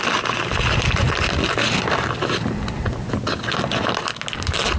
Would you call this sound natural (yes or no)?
yes